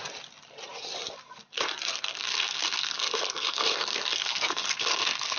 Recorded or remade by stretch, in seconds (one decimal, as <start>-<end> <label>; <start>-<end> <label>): 0.0-1.9 recorded; 1.9-5.4 remade